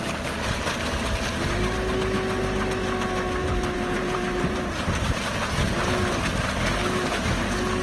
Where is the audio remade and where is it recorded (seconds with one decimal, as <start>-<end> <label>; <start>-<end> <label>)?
0.0-3.4 recorded; 3.4-5.1 remade; 5.1-7.8 recorded